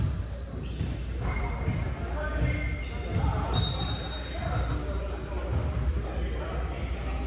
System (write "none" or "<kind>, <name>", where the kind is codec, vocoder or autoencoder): none